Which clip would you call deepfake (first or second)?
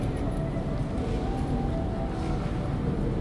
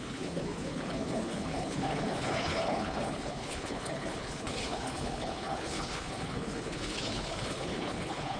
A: second